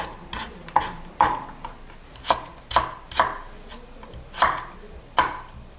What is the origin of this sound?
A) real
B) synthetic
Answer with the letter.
A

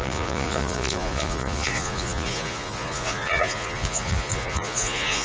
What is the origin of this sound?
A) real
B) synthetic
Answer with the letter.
B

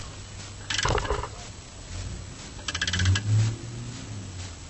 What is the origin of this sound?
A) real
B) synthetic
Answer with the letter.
A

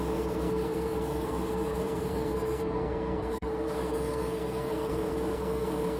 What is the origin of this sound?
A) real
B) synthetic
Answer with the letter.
B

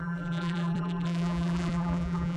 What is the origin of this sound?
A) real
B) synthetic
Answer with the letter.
B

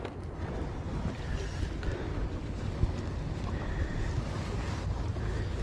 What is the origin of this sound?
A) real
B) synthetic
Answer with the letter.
A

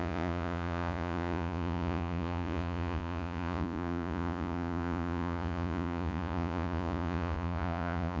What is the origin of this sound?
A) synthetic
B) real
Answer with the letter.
A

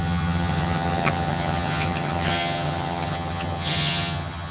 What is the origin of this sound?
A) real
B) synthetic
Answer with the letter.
B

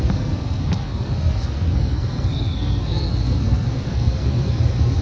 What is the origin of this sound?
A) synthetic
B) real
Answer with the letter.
A